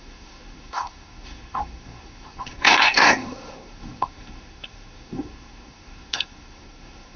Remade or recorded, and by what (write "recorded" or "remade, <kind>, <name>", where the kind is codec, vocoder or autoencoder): remade, codec, SNAC